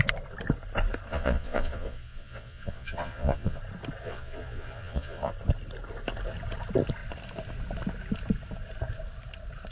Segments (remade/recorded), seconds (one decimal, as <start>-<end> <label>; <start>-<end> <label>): 0.0-1.1 recorded; 1.1-3.6 remade; 3.6-4.0 recorded; 4.0-5.3 remade; 5.3-9.7 recorded